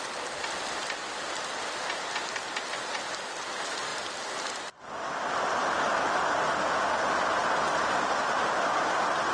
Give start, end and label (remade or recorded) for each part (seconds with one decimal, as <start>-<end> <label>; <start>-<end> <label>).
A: 0.0-9.3 recorded